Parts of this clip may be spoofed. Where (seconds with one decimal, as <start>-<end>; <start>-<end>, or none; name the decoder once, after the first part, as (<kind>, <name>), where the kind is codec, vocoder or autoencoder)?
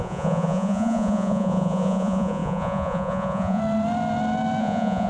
0.0-3.6 (vocoder, Vocos); 4.6-5.1